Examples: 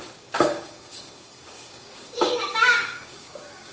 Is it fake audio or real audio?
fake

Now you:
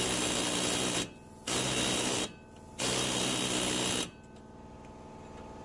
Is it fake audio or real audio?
real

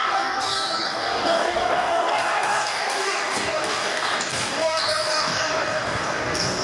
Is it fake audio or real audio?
fake